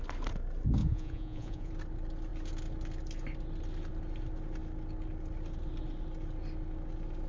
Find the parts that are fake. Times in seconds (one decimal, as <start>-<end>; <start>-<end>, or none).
0.8-1.7